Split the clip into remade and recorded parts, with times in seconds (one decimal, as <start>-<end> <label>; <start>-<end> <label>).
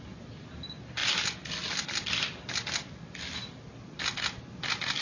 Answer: 0.0-5.0 recorded